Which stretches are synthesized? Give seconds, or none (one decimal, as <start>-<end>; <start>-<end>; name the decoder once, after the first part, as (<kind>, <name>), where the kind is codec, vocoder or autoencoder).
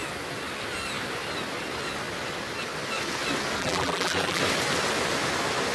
3.6-4.4 (vocoder, BigVGAN v2)